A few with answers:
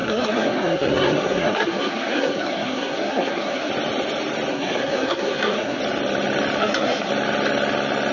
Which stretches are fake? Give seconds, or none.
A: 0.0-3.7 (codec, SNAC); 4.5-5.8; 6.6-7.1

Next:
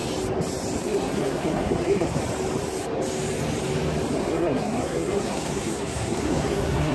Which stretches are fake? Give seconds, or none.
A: 0.8-2.2 (codec, SNAC); 4.2-6.9

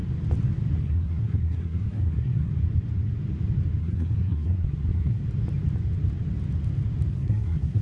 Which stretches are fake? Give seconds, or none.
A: 0.8-2.5 (codec, SNAC); 3.8-5.2; 7.1-7.8

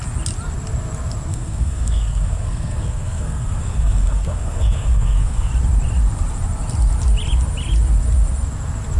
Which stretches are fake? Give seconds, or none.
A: 1.3-5.5 (codec, SNAC)

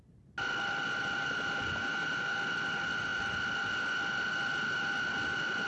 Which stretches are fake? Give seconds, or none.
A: none

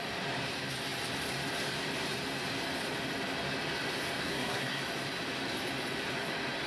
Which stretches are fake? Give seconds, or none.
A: 4.2-4.8 (codec, SNAC)

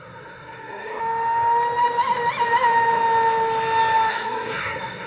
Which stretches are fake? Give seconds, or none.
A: 0.0-1.0 (codec, SNAC); 4.1-5.1

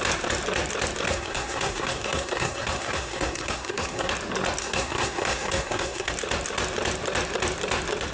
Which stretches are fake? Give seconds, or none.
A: 1.1-4.1 (codec, SNAC); 4.6-6.1